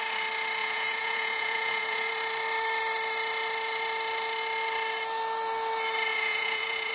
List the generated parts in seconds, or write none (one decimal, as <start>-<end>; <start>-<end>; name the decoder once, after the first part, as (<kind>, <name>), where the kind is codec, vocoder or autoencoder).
0.6-2.1 (vocoder, Vocos); 6.1-6.9